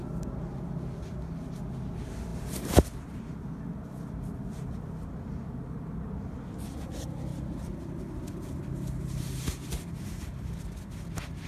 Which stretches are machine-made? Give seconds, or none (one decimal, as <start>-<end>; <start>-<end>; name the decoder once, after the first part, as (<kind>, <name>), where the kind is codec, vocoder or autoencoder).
2.3-3.2 (vocoder, BigVGAN v2); 7.3-10.7